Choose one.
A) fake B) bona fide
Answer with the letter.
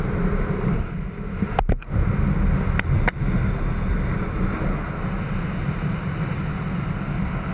B